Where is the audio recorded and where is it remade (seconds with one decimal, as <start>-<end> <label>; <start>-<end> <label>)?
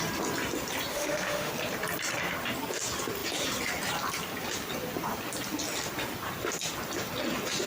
0.0-0.9 recorded; 0.9-1.5 remade; 1.5-7.7 recorded